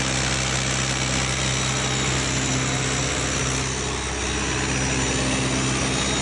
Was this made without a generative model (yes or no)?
yes